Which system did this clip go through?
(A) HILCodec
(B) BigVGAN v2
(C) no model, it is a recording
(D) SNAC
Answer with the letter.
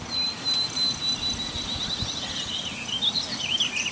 B